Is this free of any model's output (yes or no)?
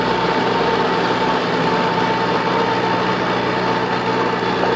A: yes